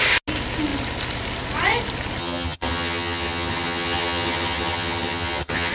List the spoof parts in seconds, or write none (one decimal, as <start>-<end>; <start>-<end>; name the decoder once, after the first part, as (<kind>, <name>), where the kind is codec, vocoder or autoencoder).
2.2-5.7 (vocoder, HiFi-GAN)